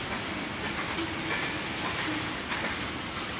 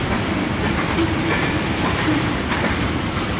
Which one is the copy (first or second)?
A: second